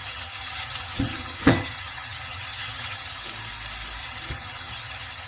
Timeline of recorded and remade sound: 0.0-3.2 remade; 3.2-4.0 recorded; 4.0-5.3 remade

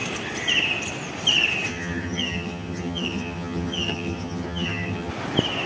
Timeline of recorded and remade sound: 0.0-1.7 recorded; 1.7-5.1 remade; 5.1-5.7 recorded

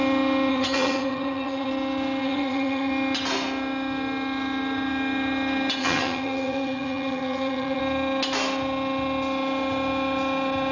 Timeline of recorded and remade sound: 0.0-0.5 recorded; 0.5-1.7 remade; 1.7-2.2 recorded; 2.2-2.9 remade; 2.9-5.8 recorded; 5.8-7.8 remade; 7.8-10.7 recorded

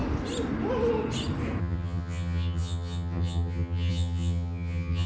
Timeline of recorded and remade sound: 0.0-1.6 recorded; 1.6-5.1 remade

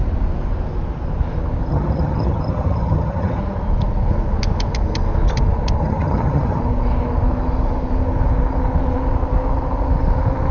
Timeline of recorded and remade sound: 0.0-1.7 recorded; 1.7-3.4 remade; 3.4-5.8 recorded; 5.8-6.6 remade; 6.6-10.5 recorded

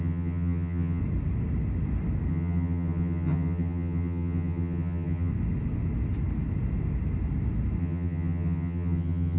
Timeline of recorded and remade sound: 0.0-1.0 remade; 1.0-2.3 recorded; 2.3-5.3 remade; 5.3-7.8 recorded; 7.8-9.4 remade